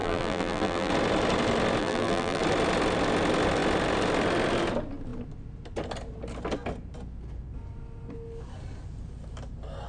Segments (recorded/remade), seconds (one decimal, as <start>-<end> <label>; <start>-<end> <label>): 0.0-0.9 remade; 0.9-1.8 recorded; 1.8-2.4 remade; 2.4-9.9 recorded